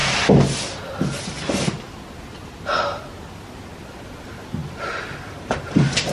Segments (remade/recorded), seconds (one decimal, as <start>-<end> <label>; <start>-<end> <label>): 0.0-6.1 recorded